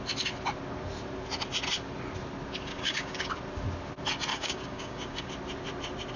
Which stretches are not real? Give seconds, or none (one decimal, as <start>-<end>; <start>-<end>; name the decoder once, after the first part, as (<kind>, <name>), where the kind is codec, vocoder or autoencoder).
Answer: 2.7-3.3 (codec, DAC); 4.3-5.3